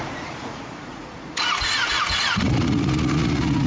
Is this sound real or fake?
fake